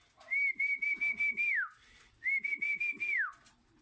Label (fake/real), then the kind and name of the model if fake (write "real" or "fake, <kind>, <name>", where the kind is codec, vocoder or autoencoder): real